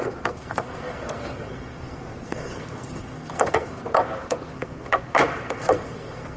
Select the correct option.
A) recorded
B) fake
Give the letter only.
B